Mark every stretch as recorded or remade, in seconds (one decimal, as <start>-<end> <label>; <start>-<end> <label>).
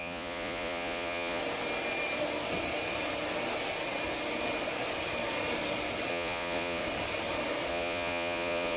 0.0-1.4 remade; 1.4-6.1 recorded; 6.1-6.8 remade; 6.8-7.7 recorded; 7.7-8.8 remade